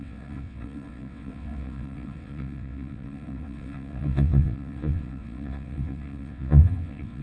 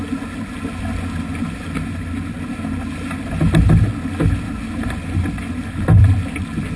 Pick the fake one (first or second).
first